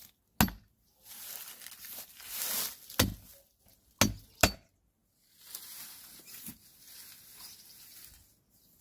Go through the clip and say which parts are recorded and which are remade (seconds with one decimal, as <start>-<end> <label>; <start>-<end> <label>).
0.0-8.8 recorded

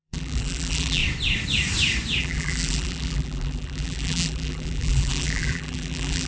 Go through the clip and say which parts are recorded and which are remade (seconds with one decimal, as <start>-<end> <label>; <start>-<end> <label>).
0.0-1.0 remade; 1.0-2.2 recorded; 2.2-6.3 remade

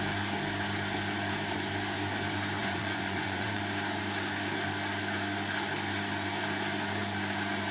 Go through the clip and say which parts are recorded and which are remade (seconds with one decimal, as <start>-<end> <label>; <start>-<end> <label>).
0.0-2.6 recorded; 2.6-3.6 remade; 3.6-7.7 recorded

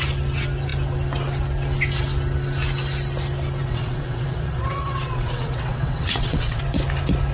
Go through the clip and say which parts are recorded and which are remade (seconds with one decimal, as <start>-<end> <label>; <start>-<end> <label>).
0.0-3.6 recorded; 3.6-6.6 remade; 6.6-7.3 recorded